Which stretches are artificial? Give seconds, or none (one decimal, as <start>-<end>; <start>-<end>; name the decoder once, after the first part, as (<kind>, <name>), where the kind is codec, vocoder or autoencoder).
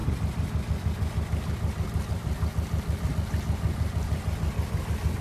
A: 0.0-3.1 (vocoder, BigVGAN v2)